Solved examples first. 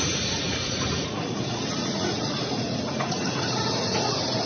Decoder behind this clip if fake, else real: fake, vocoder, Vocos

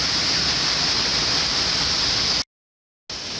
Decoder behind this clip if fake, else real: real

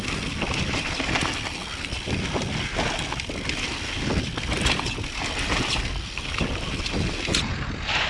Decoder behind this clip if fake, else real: real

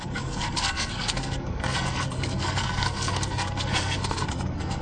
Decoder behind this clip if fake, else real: fake, codec, SNAC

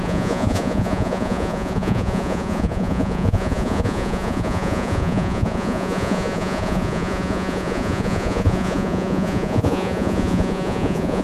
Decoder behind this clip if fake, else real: fake, vocoder, Vocos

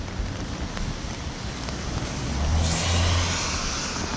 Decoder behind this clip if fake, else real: real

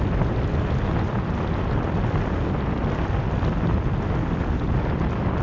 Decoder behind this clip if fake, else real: real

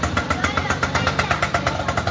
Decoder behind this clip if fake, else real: real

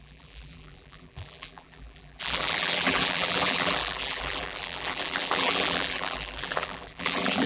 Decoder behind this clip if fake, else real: fake, vocoder, BigVGAN v2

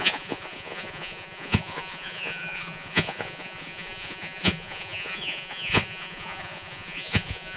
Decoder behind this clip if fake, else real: fake, vocoder, Vocos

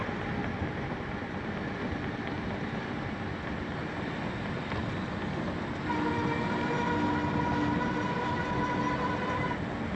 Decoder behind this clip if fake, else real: real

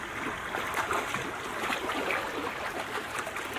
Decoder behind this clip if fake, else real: real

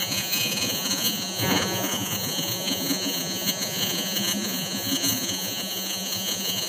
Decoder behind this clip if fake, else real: fake, vocoder, Vocos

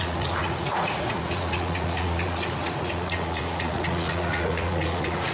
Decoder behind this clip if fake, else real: fake, vocoder, Vocos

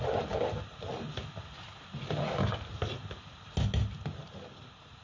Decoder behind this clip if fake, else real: real